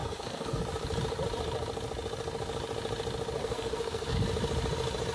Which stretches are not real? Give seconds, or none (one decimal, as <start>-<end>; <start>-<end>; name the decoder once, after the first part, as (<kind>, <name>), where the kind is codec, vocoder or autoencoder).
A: 0.0-0.6 (codec, SNAC); 3.4-4.2